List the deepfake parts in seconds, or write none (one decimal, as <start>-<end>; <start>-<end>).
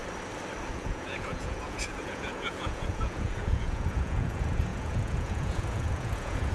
0.7-6.5